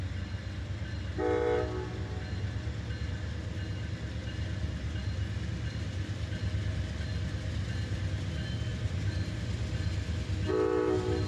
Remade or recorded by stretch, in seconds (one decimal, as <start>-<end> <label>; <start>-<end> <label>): 0.0-8.7 recorded; 8.7-9.4 remade; 9.4-11.3 recorded